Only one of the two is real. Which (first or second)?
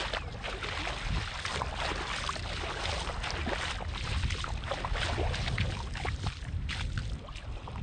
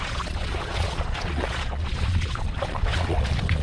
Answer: first